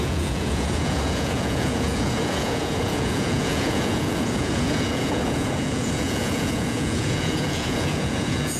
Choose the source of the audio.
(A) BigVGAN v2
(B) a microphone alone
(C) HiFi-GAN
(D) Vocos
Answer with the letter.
D